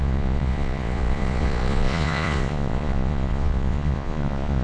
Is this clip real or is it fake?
fake